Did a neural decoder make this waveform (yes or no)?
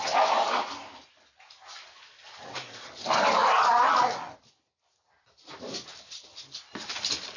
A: no